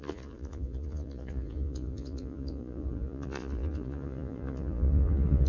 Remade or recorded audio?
remade